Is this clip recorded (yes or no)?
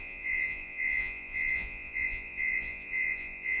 no